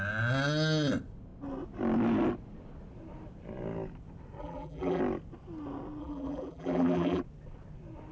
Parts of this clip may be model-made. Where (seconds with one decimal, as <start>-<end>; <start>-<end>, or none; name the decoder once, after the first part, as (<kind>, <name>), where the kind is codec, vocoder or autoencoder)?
4.4-5.0 (vocoder, BigVGAN v2); 6.0-7.2